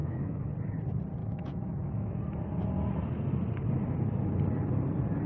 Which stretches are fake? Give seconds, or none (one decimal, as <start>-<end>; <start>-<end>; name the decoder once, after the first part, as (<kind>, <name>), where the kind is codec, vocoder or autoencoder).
0.0-0.5 (autoencoder, DAC-VAE); 1.2-2.2